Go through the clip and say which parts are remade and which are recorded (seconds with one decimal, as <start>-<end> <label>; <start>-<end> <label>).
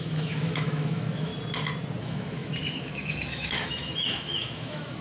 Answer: 0.0-1.3 remade; 1.3-2.0 recorded; 2.0-5.0 remade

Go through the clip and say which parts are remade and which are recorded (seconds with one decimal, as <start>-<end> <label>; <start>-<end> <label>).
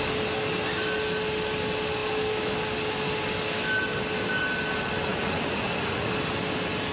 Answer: 0.0-5.1 recorded; 5.1-6.1 remade; 6.1-6.9 recorded